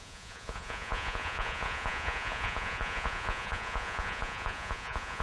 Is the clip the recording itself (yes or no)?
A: no